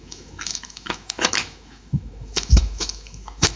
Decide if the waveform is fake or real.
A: fake